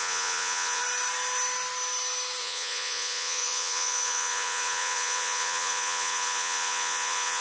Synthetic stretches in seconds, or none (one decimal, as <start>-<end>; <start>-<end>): 0.0-0.8; 2.4-7.4